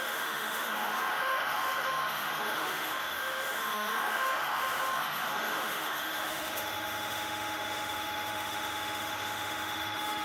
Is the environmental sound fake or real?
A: fake